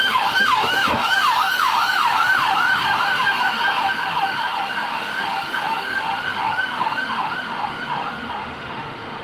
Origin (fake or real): fake